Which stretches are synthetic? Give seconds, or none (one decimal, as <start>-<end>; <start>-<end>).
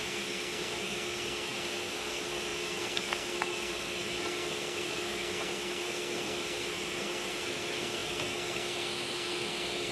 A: 0.0-9.9